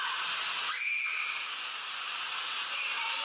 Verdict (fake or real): real